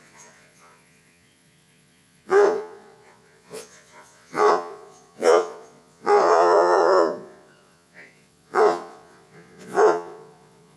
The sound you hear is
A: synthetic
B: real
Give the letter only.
A